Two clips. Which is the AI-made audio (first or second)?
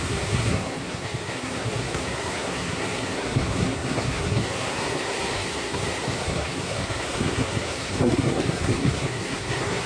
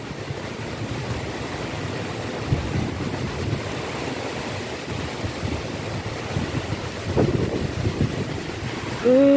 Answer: first